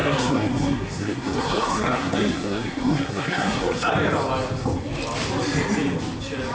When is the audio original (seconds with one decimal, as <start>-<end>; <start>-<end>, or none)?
3.9-6.5